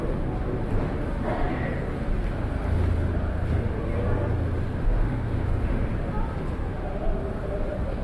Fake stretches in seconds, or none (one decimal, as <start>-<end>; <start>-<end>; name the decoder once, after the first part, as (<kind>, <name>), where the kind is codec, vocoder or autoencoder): 4.8-5.9 (autoencoder, DAC-VAE)